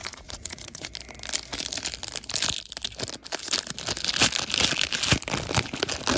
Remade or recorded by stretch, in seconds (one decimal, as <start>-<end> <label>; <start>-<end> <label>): 0.0-0.9 remade; 0.9-6.2 recorded